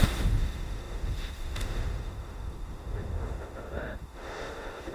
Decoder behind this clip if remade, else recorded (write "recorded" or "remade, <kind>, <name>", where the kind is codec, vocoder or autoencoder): remade, autoencoder, DAC-VAE